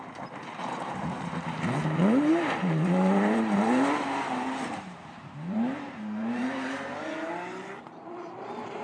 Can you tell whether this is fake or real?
fake